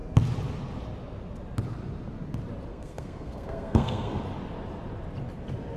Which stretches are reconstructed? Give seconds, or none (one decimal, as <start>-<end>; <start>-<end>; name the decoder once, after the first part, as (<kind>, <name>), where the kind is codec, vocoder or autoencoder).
2.7-4.2 (codec, SNAC)